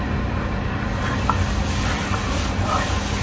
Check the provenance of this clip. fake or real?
fake